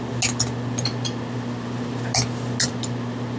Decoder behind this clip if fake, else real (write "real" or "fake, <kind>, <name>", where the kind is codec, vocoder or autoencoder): real